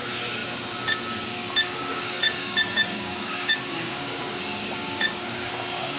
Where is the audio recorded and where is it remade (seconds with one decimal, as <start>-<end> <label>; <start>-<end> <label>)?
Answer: 0.0-1.9 recorded; 1.9-5.5 remade; 5.5-6.0 recorded